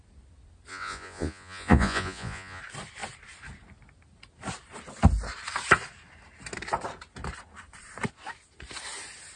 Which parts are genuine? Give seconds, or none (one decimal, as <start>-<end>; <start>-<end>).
0.0-0.7; 2.6-9.4